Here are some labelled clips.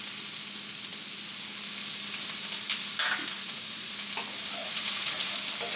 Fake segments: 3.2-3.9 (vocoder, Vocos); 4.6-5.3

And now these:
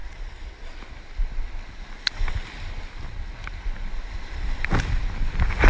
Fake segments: 0.0-0.8 (vocoder, Vocos)

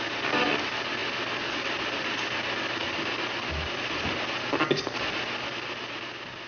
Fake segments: none

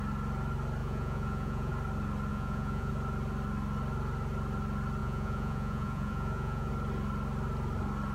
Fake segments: 0.8-1.7 (vocoder, Vocos); 2.3-2.9; 5.0-6.7

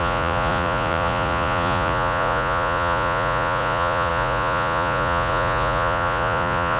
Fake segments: 0.0-6.8 (vocoder, Vocos)

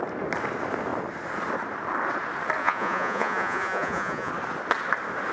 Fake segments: 2.6-4.3 (vocoder, Vocos)

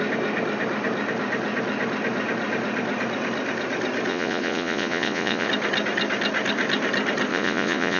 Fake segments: 4.1-5.5 (vocoder, Vocos); 7.3-8.0

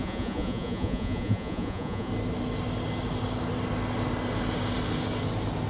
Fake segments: 0.0-2.1 (vocoder, Vocos)